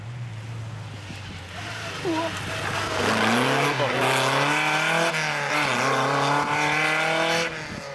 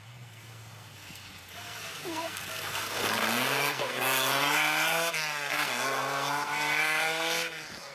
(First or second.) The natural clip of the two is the first